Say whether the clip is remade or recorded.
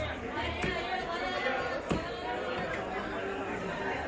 recorded